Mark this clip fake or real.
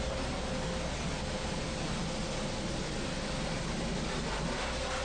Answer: real